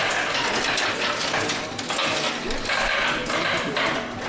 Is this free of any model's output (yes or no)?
yes